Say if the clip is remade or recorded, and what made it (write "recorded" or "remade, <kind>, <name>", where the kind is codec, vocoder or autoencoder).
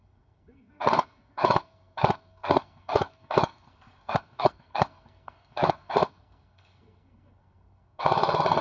remade, codec, SNAC